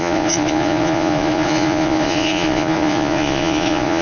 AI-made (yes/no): yes